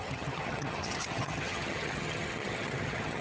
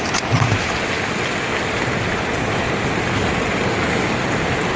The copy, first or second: first